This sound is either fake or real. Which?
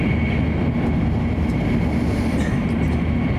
real